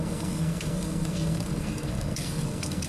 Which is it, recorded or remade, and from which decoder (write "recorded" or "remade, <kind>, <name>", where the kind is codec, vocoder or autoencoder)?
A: remade, codec, SNAC